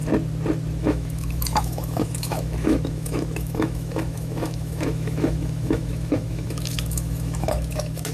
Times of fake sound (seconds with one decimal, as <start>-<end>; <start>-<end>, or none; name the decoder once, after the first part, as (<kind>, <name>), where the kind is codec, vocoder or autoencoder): 0.8-8.1 (autoencoder, DAC-VAE)